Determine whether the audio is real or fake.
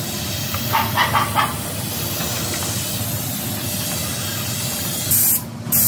real